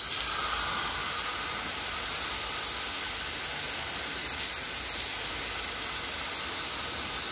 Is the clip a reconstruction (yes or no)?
no